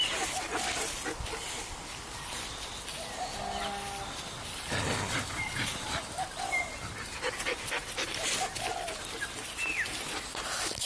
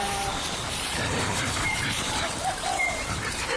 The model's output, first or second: second